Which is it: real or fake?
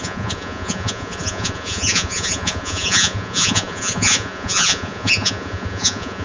fake